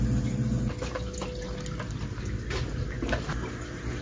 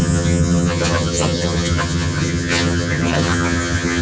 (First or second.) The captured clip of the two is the first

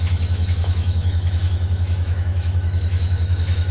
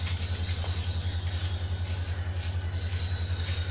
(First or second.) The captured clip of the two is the second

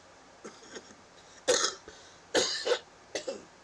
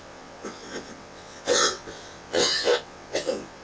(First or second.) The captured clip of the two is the first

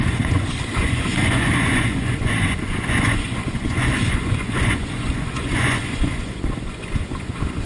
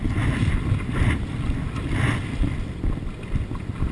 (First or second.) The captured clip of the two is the second